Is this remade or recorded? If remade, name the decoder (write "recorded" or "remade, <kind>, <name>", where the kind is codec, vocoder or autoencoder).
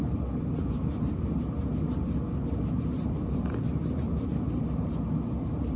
recorded